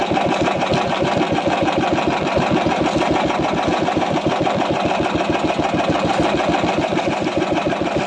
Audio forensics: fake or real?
real